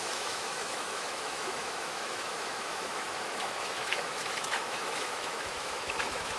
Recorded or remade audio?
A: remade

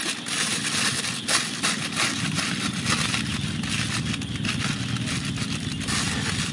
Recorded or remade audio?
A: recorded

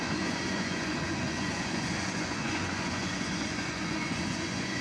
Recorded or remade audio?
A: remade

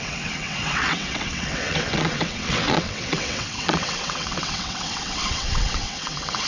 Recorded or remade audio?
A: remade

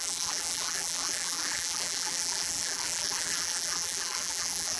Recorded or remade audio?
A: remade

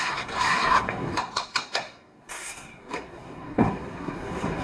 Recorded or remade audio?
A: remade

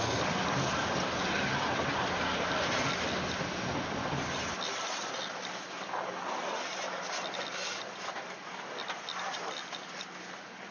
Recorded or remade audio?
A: recorded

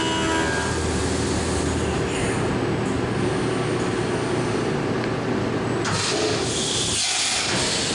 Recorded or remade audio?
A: recorded